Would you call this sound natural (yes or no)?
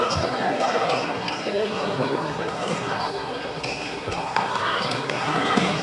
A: no